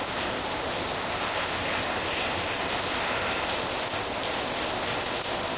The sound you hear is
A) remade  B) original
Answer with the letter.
B